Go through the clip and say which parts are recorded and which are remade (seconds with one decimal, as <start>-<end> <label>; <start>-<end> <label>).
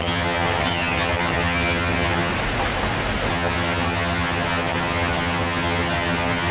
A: 0.0-2.3 remade; 2.3-3.3 recorded; 3.3-6.5 remade